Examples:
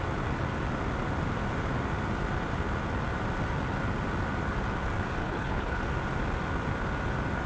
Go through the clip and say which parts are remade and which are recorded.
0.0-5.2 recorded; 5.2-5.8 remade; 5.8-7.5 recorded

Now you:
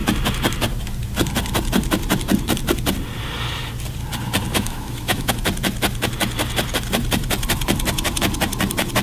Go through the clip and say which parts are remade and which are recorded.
0.0-4.5 recorded; 4.5-5.3 remade; 5.3-9.0 recorded

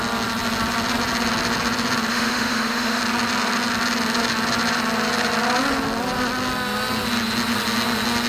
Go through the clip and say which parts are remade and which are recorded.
0.0-2.1 recorded; 2.1-3.0 remade; 3.0-8.3 recorded

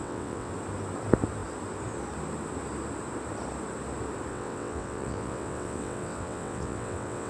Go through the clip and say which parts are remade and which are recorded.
0.0-0.5 remade; 0.5-4.3 recorded; 4.3-7.3 remade

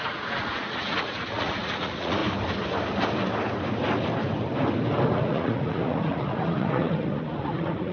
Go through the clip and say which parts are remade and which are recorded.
0.0-2.2 remade; 2.2-5.1 recorded; 5.1-7.9 remade

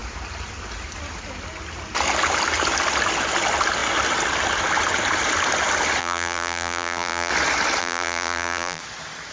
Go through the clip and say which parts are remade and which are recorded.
0.0-6.0 recorded; 6.0-7.3 remade; 7.3-7.8 recorded; 7.8-8.8 remade; 8.8-9.3 recorded

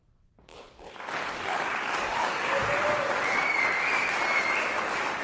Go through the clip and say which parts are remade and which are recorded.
0.0-2.6 remade; 2.6-5.2 recorded